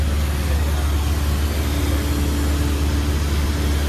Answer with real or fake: real